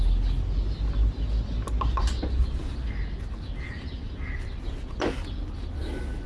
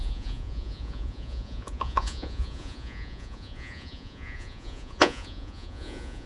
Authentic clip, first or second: first